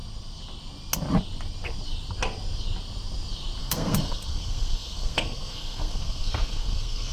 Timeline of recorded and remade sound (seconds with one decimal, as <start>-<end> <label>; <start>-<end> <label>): 0.0-3.6 recorded; 3.6-7.1 remade